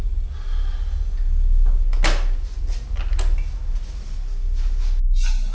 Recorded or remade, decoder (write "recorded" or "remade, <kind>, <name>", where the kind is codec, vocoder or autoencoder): recorded